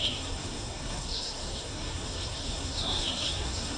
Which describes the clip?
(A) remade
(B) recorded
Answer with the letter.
A